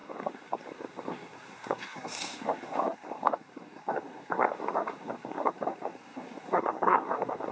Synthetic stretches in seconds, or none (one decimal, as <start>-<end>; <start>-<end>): 0.0-7.5